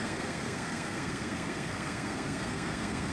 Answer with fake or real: fake